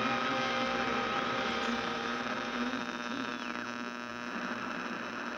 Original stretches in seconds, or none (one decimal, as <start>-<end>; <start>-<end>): 0.0-0.9; 2.8-5.4